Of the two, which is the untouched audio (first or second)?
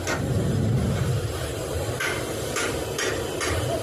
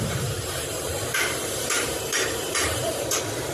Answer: first